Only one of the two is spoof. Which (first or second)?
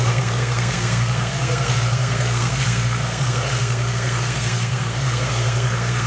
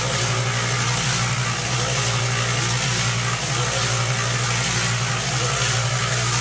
first